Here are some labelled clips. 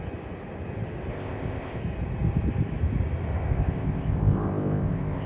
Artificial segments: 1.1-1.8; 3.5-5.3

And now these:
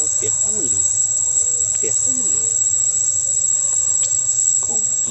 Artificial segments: 1.0-1.6; 4.2-5.1

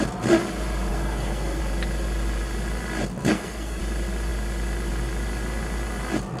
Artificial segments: 0.9-1.6; 3.3-3.8